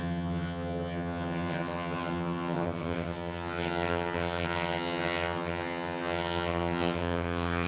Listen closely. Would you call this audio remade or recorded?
remade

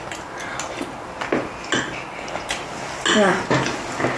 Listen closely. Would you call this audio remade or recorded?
recorded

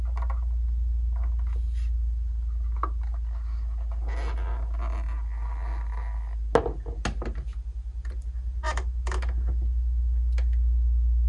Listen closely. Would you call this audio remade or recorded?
recorded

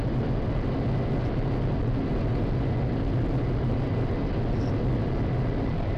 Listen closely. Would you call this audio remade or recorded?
recorded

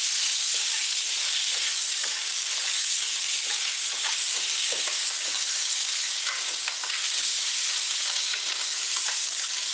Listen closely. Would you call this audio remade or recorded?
remade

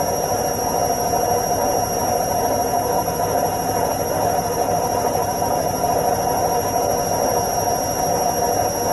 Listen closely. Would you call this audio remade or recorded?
recorded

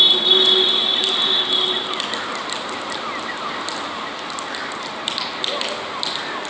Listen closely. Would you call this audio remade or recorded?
recorded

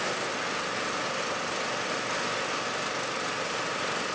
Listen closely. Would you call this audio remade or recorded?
recorded